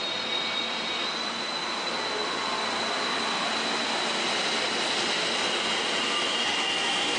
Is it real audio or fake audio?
real